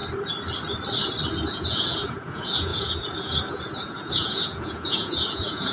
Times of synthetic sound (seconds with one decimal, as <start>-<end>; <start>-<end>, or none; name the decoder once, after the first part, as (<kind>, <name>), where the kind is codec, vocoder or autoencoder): 1.4-5.7 (vocoder, Vocos)